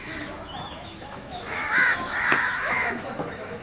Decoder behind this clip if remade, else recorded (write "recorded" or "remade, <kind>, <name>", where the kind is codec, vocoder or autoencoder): remade, autoencoder, DAC-VAE